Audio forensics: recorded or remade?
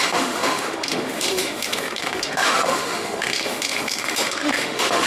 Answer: remade